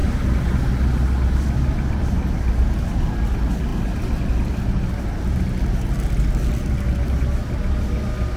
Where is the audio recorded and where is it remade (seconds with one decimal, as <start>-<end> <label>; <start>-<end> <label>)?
0.0-8.4 recorded